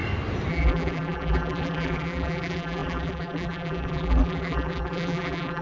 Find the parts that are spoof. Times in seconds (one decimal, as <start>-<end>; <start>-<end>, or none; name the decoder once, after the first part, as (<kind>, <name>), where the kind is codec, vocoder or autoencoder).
0.5-5.6 (vocoder, BigVGAN v2)